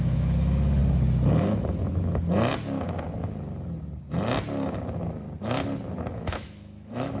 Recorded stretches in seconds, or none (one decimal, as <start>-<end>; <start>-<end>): 0.8-1.4; 1.8-6.1